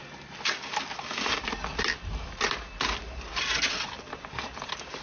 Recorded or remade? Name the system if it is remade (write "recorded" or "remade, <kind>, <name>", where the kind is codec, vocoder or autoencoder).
recorded